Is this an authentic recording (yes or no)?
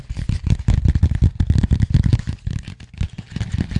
yes